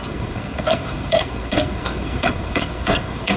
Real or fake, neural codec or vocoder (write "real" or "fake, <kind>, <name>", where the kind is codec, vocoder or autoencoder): fake, codec, SNAC